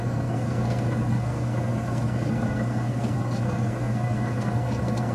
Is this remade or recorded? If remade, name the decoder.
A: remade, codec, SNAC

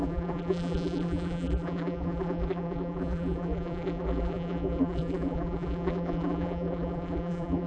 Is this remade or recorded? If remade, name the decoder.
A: remade, vocoder, BigVGAN v2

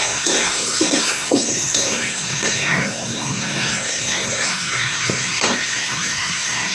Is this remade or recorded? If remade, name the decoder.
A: remade, codec, SNAC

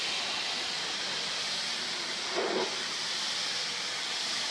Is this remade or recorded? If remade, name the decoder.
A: recorded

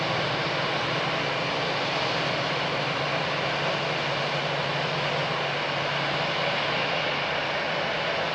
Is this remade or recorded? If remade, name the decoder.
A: recorded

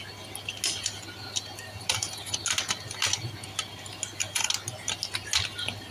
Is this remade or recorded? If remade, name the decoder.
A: recorded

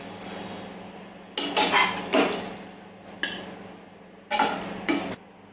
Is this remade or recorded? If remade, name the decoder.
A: recorded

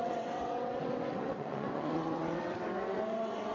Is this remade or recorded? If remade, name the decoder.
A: remade, vocoder, WaveNeXt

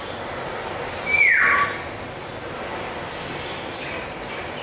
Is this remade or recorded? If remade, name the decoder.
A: recorded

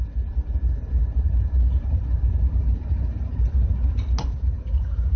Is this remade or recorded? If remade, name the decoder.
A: recorded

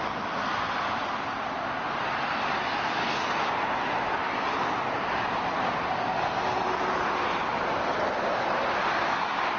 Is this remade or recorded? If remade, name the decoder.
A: recorded